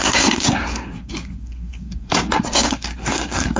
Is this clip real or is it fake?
fake